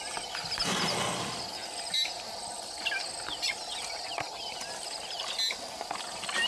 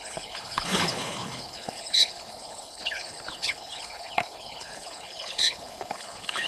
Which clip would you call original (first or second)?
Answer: first